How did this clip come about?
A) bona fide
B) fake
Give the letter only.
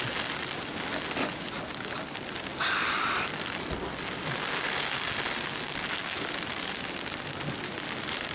A